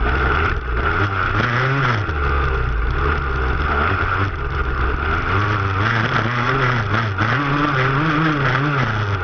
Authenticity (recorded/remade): recorded